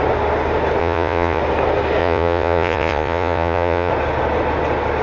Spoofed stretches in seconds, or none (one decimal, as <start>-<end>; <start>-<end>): 0.8-1.4; 2.0-3.9